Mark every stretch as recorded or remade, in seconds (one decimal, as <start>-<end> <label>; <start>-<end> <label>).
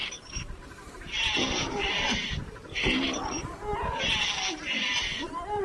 0.0-3.2 remade; 3.2-4.7 recorded; 4.7-5.6 remade